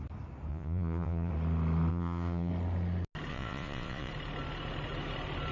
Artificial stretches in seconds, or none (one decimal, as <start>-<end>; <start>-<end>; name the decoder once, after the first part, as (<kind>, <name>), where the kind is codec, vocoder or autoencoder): 0.5-1.3 (vocoder, Vocos); 1.9-2.5; 3.3-4.1